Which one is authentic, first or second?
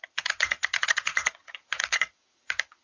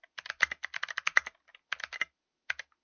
second